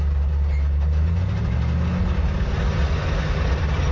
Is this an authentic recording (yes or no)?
yes